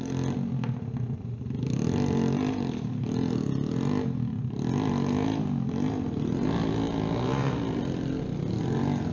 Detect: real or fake real